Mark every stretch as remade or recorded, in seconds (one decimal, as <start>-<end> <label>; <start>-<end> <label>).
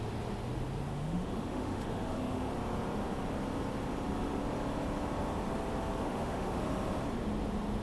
0.0-0.9 recorded; 0.9-2.5 remade; 2.5-6.0 recorded; 6.0-6.6 remade; 6.6-7.8 recorded